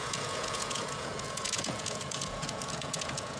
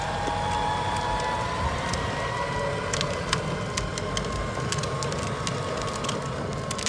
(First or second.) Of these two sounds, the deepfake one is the first